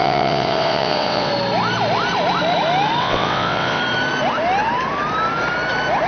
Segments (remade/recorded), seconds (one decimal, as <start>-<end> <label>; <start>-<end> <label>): 0.0-1.3 remade; 1.3-3.0 recorded; 3.0-3.8 remade; 3.8-6.1 recorded